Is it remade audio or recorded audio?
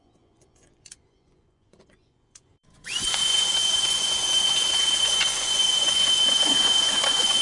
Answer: remade